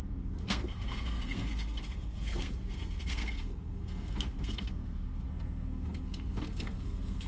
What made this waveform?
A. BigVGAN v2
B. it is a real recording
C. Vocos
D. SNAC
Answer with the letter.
D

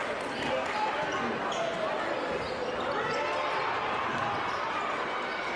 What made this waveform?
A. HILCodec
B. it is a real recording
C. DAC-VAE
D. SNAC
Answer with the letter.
B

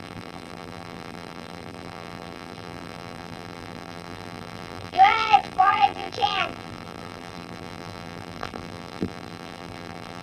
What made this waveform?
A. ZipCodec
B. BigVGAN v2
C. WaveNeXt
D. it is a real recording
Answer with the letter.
B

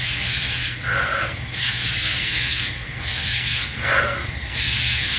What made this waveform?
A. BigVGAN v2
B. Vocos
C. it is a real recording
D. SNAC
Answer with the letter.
D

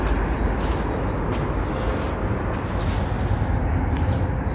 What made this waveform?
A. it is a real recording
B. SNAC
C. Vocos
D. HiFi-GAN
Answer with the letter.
A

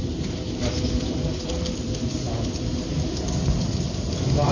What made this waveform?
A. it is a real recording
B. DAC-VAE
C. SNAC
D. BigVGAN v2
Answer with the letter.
A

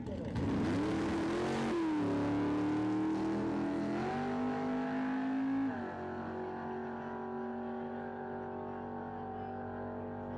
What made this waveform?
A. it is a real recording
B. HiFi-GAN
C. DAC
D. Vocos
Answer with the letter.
A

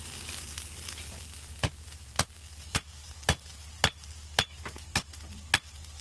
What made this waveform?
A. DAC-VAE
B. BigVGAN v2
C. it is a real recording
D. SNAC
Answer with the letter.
C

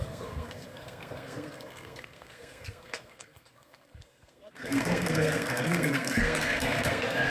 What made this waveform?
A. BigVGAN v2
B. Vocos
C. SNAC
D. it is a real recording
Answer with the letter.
C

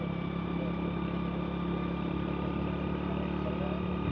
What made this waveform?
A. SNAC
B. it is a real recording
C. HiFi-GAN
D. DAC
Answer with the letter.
B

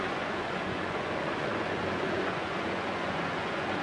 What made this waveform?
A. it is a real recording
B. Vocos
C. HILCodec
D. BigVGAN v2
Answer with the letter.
B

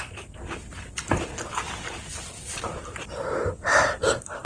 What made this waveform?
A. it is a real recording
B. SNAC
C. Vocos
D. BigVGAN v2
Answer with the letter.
A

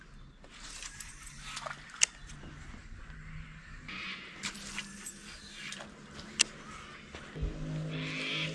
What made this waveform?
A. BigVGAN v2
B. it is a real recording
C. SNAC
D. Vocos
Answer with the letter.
B